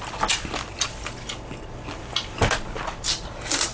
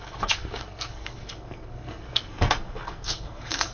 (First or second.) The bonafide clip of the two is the first